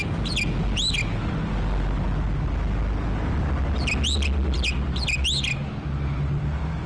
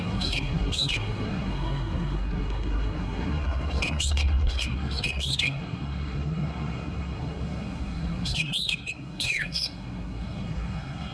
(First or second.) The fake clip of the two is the second